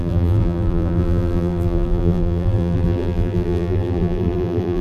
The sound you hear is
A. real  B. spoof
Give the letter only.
B